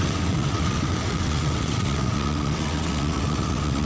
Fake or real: fake